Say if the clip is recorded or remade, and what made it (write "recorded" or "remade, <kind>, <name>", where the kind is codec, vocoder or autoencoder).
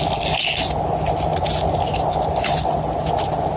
recorded